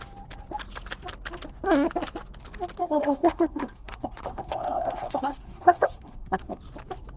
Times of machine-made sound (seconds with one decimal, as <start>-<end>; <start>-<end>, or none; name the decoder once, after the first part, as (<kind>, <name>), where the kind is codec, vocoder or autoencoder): 2.8-6.6 (codec, SNAC)